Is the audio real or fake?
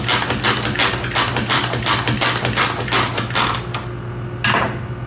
real